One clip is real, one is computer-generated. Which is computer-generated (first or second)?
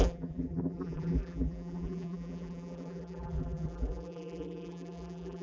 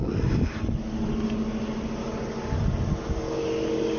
first